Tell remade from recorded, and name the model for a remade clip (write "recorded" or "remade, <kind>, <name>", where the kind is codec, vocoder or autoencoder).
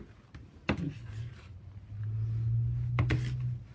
recorded